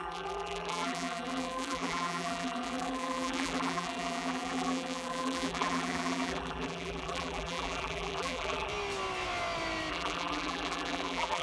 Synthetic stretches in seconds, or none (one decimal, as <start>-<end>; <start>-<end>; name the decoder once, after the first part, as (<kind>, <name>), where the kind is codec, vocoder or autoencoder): 0.0-8.7 (vocoder, BigVGAN v2); 9.9-11.4